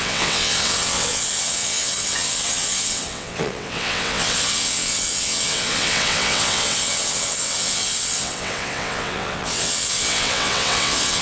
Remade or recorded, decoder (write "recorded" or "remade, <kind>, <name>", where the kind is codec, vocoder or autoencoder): remade, vocoder, WaveNeXt